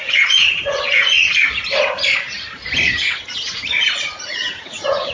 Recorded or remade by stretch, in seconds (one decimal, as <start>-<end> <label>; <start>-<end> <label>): 0.0-1.2 remade; 1.2-3.5 recorded; 3.5-5.1 remade